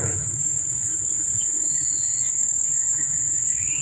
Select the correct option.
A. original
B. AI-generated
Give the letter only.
B